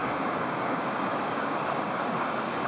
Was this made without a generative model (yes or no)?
no